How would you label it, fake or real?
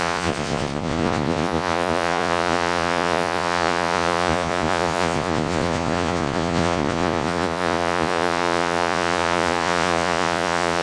fake